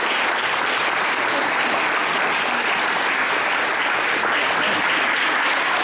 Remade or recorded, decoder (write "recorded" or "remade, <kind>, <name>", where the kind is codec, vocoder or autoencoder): recorded